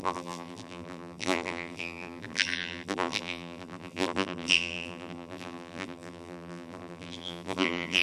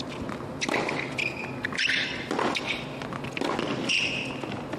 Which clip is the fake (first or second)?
first